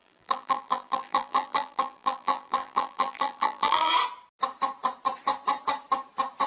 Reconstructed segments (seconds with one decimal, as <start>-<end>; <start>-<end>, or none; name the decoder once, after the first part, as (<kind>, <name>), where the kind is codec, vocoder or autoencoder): 0.0-3.9 (vocoder, BigVGAN v2)